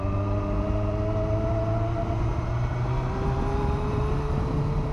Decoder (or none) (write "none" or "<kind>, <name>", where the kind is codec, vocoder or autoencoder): none